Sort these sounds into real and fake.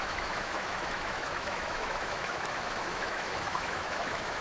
fake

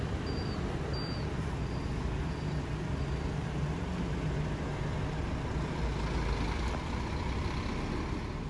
real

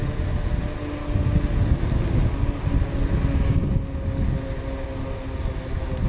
real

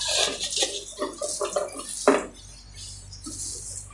real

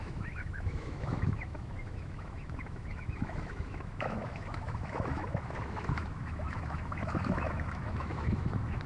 fake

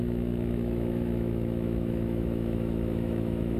fake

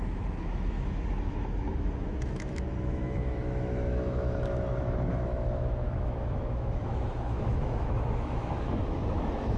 fake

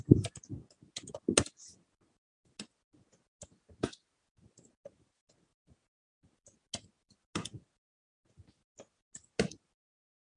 real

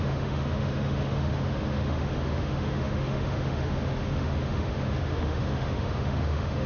fake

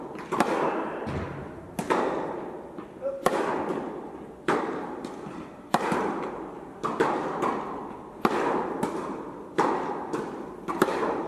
real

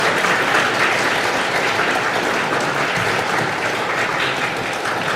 real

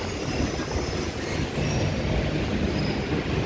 real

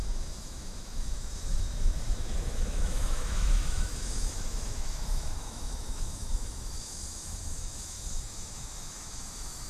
fake